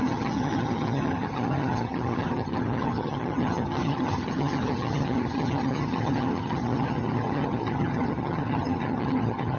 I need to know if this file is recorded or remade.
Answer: remade